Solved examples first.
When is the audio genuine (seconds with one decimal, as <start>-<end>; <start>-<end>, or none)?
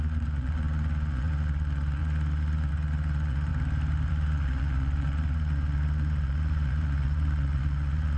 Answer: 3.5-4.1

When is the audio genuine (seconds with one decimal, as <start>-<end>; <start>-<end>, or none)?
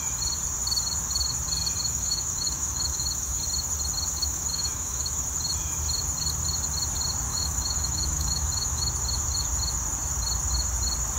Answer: 0.0-1.9; 3.4-4.1; 5.2-7.3; 8.9-11.2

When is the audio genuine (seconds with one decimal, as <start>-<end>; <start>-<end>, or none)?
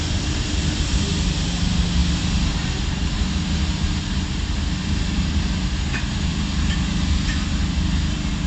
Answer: 0.0-6.3; 6.9-8.5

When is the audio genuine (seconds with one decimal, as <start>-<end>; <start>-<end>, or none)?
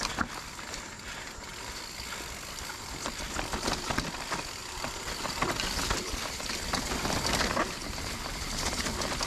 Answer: 0.0-4.6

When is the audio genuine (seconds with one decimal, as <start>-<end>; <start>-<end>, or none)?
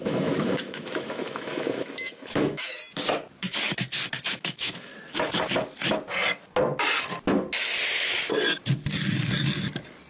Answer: 2.8-4.3; 4.9-10.1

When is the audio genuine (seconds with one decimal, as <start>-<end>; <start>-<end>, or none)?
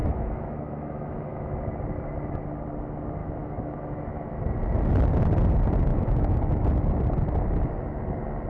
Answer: 1.5-3.2; 4.4-5.9; 6.7-8.5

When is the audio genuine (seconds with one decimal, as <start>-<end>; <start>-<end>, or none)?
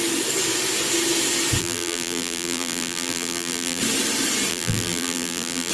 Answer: 0.0-1.6; 3.8-4.5